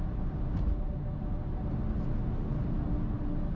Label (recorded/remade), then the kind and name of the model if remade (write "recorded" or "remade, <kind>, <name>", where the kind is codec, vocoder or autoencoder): recorded